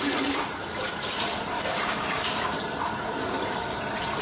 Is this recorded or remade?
remade